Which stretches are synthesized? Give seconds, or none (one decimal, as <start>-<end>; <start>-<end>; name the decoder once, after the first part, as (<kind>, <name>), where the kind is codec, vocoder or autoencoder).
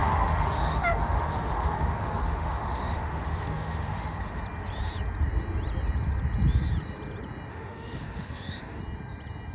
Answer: 0.0-4.4 (autoencoder, DAC-VAE); 7.5-8.8